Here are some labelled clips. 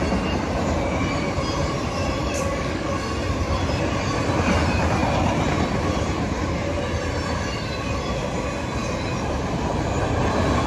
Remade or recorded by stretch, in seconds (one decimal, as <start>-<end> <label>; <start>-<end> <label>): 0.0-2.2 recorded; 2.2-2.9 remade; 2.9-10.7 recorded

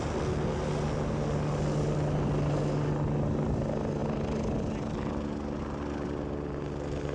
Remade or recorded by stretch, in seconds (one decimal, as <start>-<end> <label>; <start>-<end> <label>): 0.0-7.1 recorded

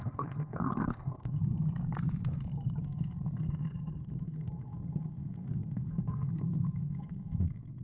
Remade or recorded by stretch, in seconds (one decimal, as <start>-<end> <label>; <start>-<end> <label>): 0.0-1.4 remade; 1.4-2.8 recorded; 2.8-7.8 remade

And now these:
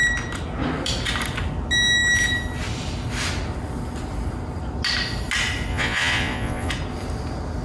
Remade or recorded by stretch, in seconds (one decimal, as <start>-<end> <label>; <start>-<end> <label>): 0.0-5.7 recorded; 5.7-6.7 remade; 6.7-7.6 recorded

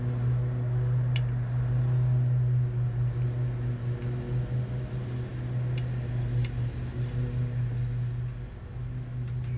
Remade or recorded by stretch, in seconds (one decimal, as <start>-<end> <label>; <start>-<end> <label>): 0.0-9.6 recorded

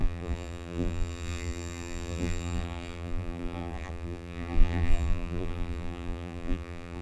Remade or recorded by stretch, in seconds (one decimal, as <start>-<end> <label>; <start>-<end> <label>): 0.0-7.0 remade

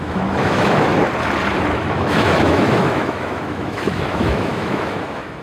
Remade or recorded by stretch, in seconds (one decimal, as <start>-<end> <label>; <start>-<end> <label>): 0.0-0.9 remade; 0.9-1.7 recorded; 1.7-5.4 remade

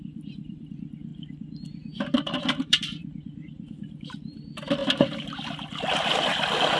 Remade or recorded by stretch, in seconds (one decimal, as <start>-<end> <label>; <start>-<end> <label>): 0.0-1.1 remade; 1.1-2.4 recorded; 2.4-4.8 remade; 4.8-6.8 recorded